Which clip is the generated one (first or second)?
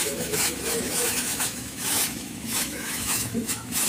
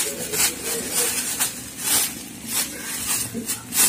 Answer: first